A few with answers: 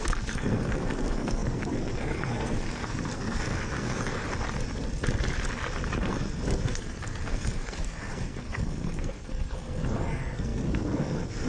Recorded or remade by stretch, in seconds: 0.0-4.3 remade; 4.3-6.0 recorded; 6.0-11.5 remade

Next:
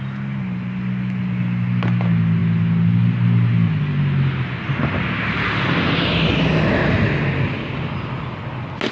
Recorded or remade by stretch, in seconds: 0.0-8.9 recorded